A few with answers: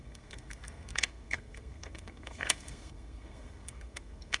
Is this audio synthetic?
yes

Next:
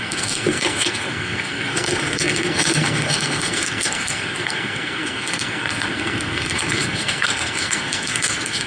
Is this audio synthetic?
yes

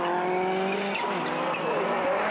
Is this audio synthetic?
no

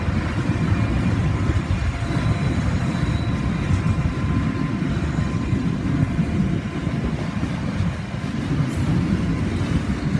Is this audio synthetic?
no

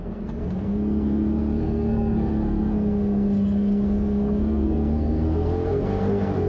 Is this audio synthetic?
yes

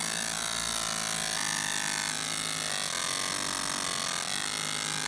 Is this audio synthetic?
no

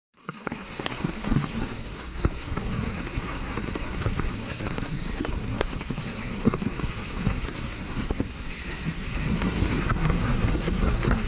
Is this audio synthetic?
yes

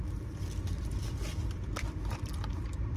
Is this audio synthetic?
no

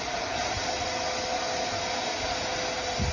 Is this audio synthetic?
no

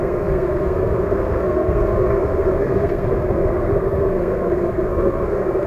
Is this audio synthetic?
yes